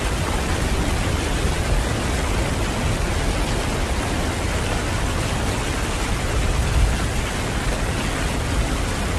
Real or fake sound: real